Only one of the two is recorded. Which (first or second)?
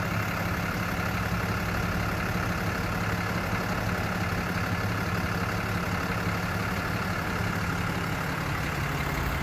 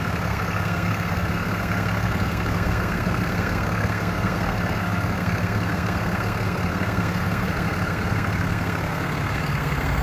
first